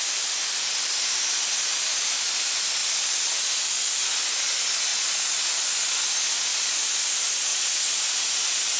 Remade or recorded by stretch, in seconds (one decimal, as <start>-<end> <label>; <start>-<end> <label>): 0.0-4.9 recorded; 4.9-5.6 remade; 5.6-7.5 recorded; 7.5-8.3 remade; 8.3-8.8 recorded